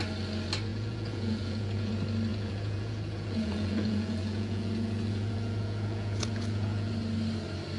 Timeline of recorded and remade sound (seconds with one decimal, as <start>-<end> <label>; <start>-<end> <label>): 0.0-0.7 recorded; 0.7-1.9 remade; 1.9-2.3 recorded; 2.3-6.9 remade; 6.9-7.8 recorded